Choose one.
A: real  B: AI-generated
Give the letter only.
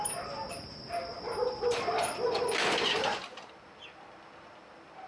A